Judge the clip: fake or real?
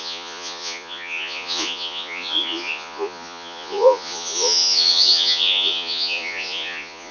fake